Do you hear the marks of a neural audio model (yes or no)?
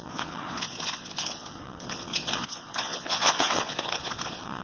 yes